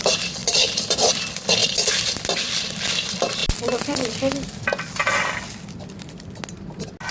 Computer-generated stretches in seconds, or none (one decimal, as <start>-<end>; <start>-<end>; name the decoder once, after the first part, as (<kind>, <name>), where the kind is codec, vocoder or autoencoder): 0.4-0.9 (vocoder, BigVGAN v2); 1.6-2.8; 3.4-4.5